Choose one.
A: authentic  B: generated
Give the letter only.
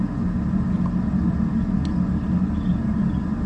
A